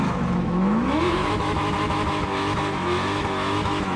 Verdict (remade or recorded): remade